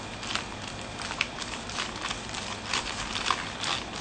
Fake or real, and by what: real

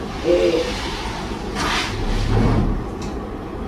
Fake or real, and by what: real